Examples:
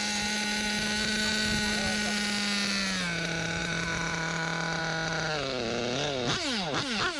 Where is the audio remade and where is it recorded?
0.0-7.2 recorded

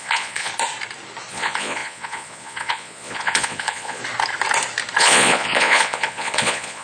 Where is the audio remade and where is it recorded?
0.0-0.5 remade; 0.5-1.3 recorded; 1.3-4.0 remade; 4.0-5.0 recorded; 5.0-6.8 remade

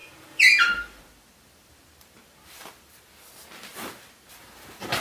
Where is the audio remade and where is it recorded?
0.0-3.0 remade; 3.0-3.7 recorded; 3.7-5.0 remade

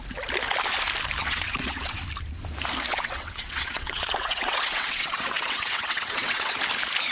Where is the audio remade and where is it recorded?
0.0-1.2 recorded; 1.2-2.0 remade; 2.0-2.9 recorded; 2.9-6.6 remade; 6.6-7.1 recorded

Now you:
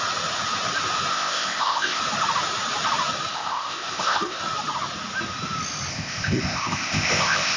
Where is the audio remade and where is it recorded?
0.0-1.1 recorded; 1.1-2.0 remade; 2.0-3.3 recorded; 3.3-4.4 remade; 4.4-5.9 recorded; 5.9-7.6 remade

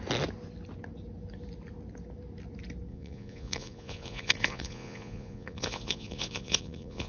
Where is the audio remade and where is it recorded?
0.0-2.9 recorded; 2.9-7.1 remade

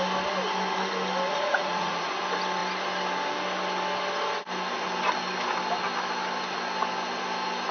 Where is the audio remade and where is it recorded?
0.0-1.3 recorded; 1.3-2.1 remade; 2.1-7.7 recorded

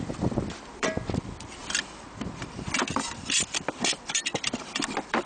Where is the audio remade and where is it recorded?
0.0-5.3 remade